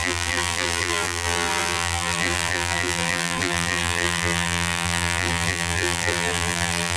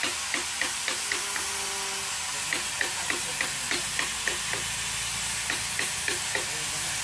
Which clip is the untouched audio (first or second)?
second